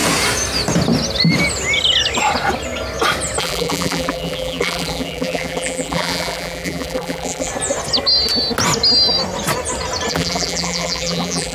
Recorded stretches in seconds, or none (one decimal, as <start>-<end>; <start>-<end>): 0.0-3.4; 7.5-10.1

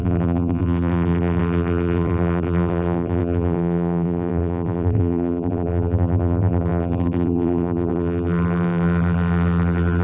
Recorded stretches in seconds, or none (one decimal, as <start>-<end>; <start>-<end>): none

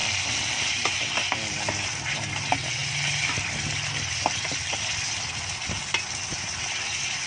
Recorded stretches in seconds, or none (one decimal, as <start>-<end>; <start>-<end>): 1.9-2.8; 4.9-7.3

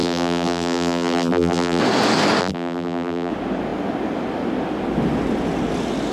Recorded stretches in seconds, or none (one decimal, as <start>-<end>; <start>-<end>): 1.8-2.4; 3.3-6.1

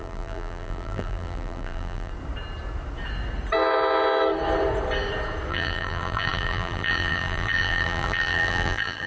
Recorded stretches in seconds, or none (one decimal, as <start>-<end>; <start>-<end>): 2.1-5.5

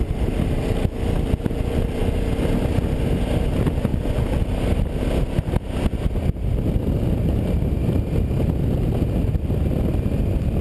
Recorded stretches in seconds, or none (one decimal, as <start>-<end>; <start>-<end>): 0.0-10.6

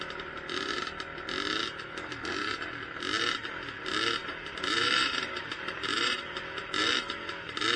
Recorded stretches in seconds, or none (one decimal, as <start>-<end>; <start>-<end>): 0.0-4.2; 6.9-7.8